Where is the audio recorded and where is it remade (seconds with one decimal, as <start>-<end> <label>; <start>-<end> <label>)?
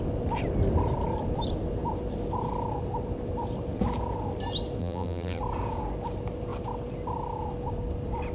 0.0-4.8 recorded; 4.8-5.4 remade; 5.4-8.3 recorded